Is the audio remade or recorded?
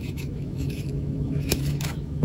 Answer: remade